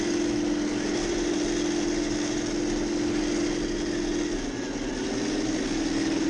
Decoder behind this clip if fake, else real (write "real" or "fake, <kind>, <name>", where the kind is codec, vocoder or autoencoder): real